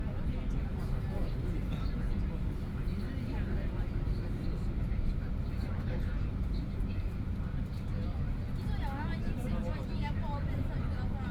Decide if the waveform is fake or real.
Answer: real